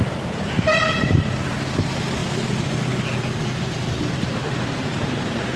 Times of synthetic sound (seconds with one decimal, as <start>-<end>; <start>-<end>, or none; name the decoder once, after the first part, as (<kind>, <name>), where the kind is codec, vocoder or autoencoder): 0.0-2.2 (vocoder, BigVGAN v2); 3.9-5.6